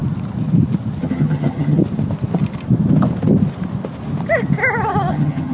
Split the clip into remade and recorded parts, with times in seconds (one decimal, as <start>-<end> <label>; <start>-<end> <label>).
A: 0.0-1.0 recorded; 1.0-1.8 remade; 1.8-5.1 recorded; 5.1-5.5 remade